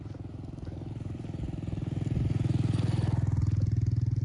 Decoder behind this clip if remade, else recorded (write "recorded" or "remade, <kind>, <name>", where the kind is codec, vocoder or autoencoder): recorded